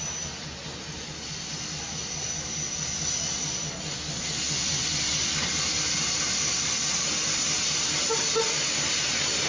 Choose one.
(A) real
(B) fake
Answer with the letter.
A